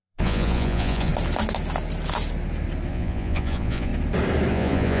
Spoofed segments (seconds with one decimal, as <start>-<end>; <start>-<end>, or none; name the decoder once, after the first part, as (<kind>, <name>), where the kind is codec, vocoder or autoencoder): 0.0-1.1 (vocoder, Vocos); 2.9-3.9; 4.5-5.0